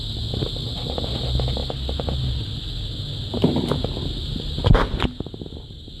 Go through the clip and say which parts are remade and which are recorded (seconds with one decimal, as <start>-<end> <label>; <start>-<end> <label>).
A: 0.0-6.0 recorded